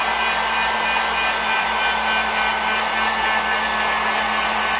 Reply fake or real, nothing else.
real